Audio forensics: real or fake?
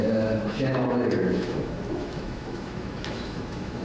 fake